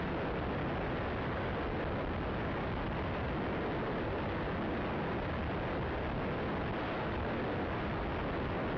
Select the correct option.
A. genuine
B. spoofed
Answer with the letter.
A